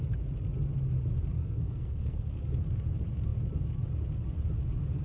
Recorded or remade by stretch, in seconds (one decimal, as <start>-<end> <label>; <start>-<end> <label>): 0.0-1.4 recorded; 1.4-2.4 remade; 2.4-5.0 recorded